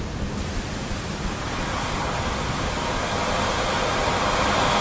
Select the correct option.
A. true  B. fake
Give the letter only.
A